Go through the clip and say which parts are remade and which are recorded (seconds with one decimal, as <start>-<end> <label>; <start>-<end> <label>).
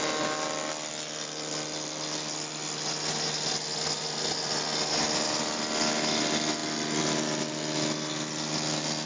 0.0-9.1 recorded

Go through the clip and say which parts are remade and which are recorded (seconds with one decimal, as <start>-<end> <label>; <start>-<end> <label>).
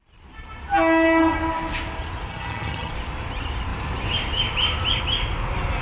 0.0-2.3 recorded; 2.3-2.9 remade; 2.9-5.8 recorded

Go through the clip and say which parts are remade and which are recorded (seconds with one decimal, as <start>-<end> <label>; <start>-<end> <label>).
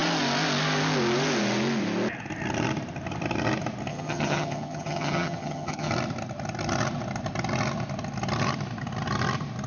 0.0-3.9 recorded; 3.9-5.9 remade; 5.9-9.7 recorded